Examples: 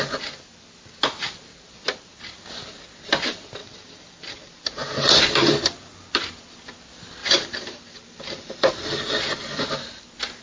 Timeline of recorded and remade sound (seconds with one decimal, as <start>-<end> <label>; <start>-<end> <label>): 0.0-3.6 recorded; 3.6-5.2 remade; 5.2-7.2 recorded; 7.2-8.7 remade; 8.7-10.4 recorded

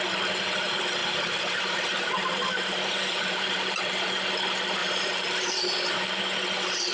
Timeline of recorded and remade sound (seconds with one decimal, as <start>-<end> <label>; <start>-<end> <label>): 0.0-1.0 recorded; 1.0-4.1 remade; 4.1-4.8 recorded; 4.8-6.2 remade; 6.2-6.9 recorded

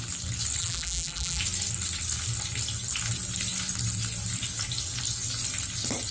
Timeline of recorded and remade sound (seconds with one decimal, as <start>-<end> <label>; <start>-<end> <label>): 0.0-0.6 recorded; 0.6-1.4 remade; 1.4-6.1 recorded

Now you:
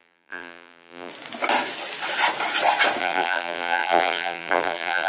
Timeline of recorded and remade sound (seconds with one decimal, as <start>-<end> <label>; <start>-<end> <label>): 0.0-1.1 remade; 1.1-3.0 recorded; 3.0-5.1 remade